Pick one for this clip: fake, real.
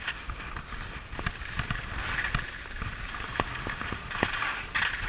real